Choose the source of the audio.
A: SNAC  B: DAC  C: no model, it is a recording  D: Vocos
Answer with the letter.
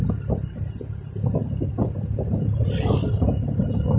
C